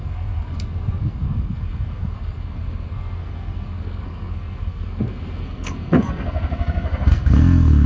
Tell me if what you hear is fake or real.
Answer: fake